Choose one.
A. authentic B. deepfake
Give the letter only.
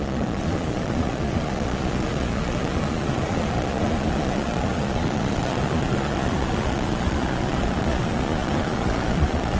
B